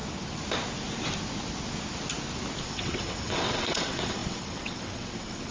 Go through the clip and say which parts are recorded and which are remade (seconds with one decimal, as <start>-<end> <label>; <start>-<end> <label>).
0.0-2.6 recorded; 2.6-5.5 remade